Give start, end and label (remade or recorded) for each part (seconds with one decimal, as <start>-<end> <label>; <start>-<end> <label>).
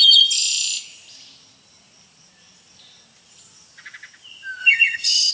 0.0-4.6 recorded; 4.6-5.3 remade